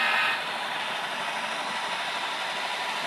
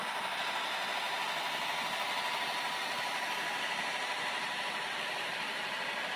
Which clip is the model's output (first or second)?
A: first